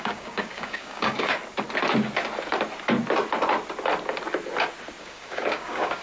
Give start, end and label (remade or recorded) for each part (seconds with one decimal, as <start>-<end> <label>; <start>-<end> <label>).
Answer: 0.0-1.4 remade; 1.4-5.0 recorded; 5.0-6.0 remade